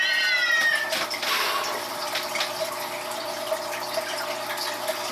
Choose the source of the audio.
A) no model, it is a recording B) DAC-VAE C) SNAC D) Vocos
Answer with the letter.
A